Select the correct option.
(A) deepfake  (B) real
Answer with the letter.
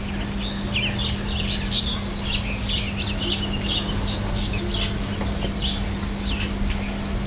B